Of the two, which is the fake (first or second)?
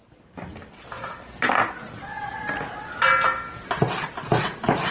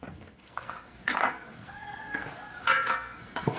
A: second